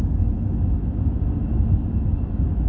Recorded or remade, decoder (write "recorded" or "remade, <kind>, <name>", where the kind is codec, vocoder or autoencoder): remade, autoencoder, DAC-VAE